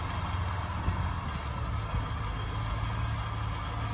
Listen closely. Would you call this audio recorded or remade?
recorded